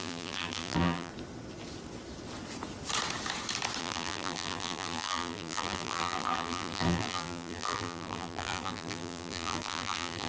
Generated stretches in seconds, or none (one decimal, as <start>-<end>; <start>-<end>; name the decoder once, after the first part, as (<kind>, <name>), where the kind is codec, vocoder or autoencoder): 0.0-1.1 (vocoder, BigVGAN v2); 3.8-10.3